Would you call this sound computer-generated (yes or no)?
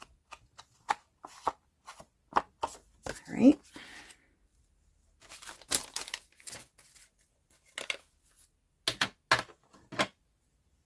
no